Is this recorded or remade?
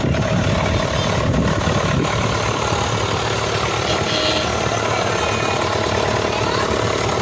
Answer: recorded